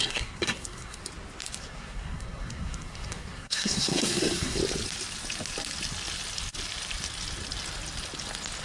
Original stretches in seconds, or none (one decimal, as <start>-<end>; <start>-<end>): 1.0-1.6; 4.6-8.6